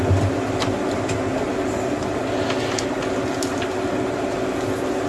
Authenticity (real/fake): real